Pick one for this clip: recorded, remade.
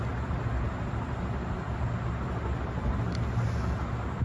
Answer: recorded